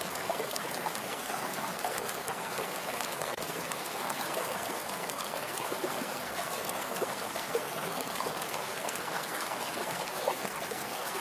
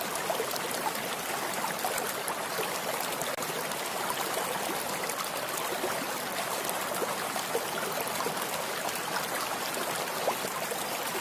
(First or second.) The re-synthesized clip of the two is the first